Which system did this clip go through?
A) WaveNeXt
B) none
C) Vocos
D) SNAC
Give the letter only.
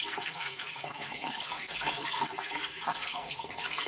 D